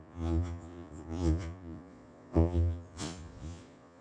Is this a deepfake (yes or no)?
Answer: yes